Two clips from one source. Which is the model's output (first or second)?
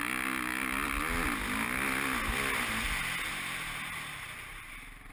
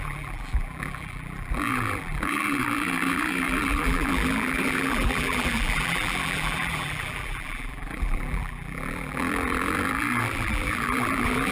second